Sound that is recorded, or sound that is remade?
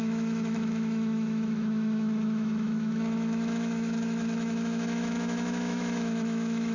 remade